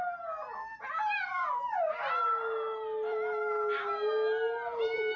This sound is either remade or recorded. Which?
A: recorded